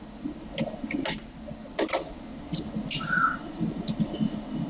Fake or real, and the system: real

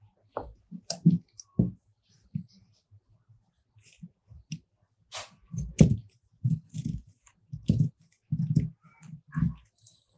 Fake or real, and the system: real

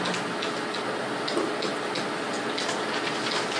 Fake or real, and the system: real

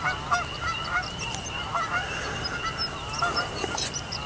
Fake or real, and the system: real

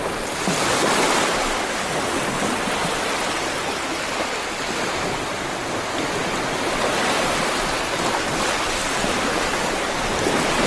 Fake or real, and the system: real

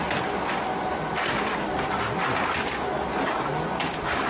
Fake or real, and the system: real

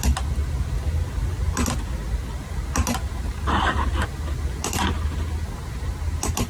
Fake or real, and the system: real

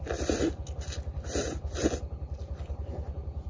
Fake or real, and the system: real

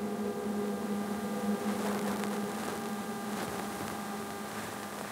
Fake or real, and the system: real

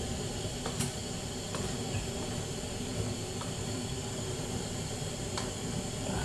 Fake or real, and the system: fake, vocoder, BigVGAN v2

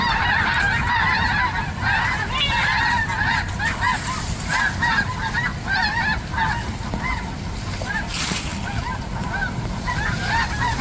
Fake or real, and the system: real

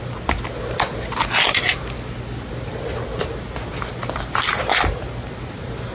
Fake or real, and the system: real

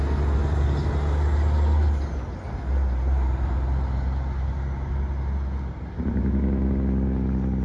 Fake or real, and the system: real